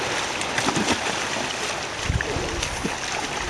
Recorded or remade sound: recorded